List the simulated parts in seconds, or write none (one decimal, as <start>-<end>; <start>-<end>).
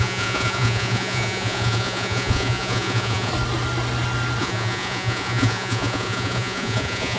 0.0-3.3; 4.4-7.2